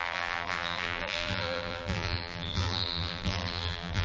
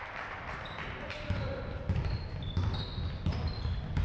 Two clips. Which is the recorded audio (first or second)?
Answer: second